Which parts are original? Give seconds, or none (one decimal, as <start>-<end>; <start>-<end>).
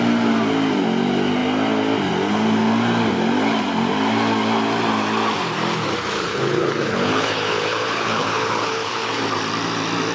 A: 0.0-6.3; 9.2-10.1